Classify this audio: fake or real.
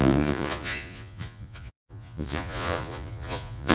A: fake